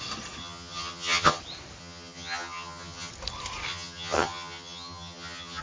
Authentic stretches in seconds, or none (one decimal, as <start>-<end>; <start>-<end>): 0.0-0.4; 1.4-1.8; 3.1-3.7